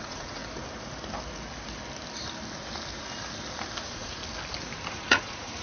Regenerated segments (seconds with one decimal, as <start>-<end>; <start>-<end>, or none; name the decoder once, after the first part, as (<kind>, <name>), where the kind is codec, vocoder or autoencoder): 0.0-0.4 (vocoder, Vocos); 3.8-4.2; 4.9-5.6